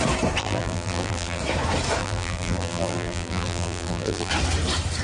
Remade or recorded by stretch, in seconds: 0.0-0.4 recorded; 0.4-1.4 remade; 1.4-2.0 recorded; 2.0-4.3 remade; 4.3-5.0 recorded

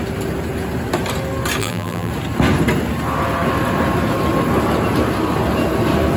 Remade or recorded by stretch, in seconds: 0.0-1.6 recorded; 1.6-2.1 remade; 2.1-6.2 recorded